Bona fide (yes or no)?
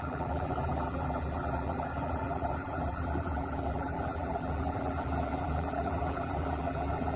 no